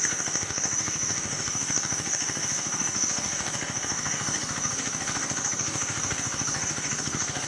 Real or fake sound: fake